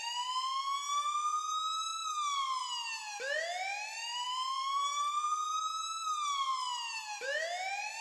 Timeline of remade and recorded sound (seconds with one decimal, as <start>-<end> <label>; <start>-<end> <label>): 0.0-4.1 recorded; 4.1-5.6 remade; 5.6-8.0 recorded